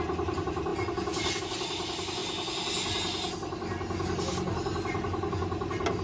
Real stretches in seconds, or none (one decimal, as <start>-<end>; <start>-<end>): 0.0-6.0